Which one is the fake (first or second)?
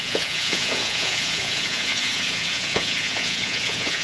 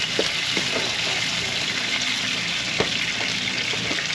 first